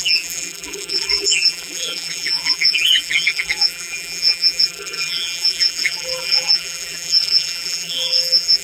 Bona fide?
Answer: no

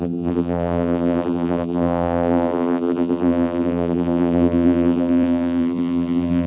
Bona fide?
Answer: no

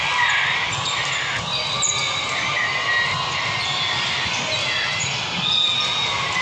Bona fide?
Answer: yes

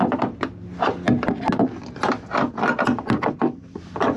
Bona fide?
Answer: yes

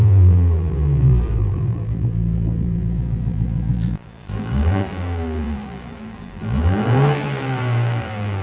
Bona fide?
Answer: no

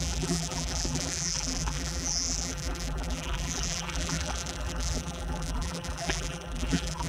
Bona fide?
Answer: no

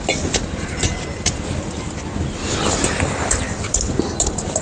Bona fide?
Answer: yes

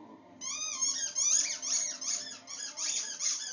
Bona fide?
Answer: no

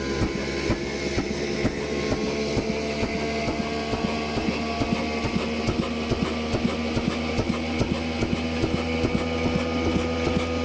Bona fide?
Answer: yes